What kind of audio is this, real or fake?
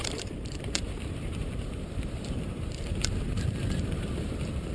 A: fake